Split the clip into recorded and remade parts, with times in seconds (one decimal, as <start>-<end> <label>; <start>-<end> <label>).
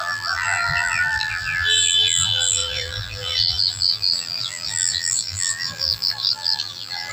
0.0-7.1 remade